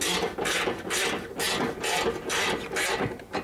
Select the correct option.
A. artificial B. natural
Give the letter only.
B